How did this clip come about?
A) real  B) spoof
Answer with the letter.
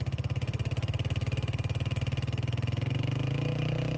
A